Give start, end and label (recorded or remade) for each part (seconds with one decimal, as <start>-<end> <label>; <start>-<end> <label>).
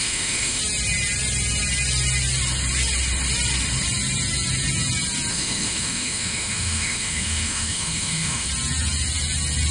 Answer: 0.0-0.6 remade; 0.6-5.3 recorded; 5.3-8.5 remade; 8.5-9.7 recorded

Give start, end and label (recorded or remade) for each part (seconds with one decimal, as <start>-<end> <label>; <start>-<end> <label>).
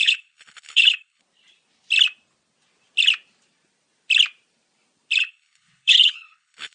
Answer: 0.0-1.2 remade; 1.2-5.2 recorded; 5.2-6.7 remade